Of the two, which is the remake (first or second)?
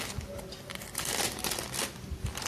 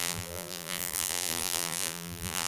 second